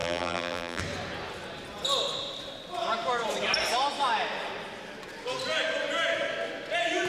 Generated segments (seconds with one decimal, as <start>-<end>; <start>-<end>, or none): 0.0-0.8